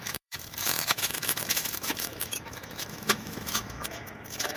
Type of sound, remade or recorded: remade